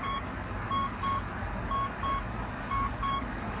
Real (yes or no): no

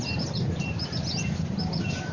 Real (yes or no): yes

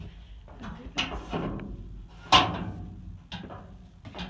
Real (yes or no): yes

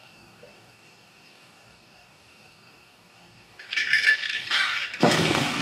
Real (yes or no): no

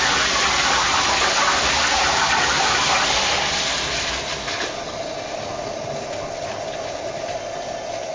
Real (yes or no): yes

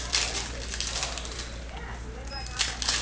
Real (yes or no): yes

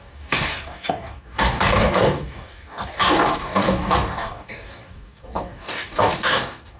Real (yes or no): no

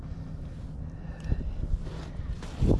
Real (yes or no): yes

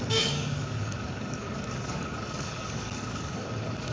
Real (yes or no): no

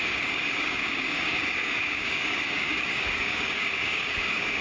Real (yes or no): no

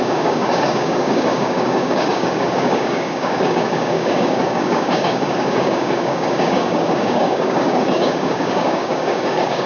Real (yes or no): no